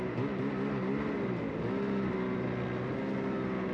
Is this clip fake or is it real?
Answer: real